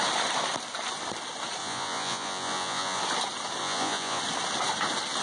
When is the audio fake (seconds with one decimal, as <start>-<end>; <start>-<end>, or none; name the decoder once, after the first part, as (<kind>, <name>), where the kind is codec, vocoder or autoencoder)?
1.6-3.0 (vocoder, Vocos); 3.6-4.2